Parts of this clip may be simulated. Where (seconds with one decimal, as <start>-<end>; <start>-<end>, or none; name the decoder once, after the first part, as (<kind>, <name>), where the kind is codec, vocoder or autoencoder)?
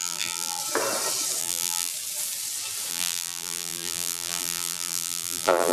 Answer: 0.0-0.6 (vocoder, BigVGAN v2); 1.4-1.9; 2.9-5.7